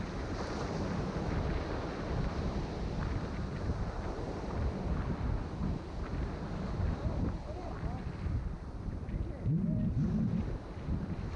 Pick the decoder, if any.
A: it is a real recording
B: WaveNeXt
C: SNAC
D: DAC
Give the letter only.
A